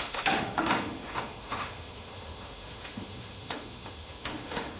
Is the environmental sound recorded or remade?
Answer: remade